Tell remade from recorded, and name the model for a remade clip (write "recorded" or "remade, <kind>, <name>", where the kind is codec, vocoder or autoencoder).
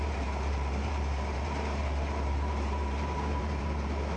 remade, vocoder, BigVGAN v2